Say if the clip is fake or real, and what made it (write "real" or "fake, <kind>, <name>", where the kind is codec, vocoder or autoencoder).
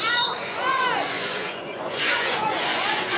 fake, vocoder, Vocos